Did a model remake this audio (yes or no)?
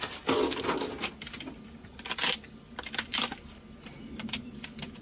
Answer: no